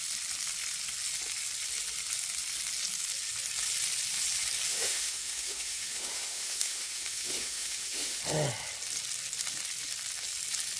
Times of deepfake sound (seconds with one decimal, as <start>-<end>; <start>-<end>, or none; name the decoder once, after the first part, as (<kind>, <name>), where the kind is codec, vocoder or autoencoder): 4.7-8.2 (autoencoder, DAC-VAE)